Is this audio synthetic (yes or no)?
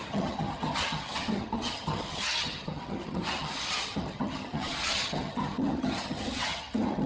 yes